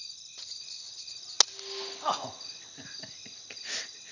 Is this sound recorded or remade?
recorded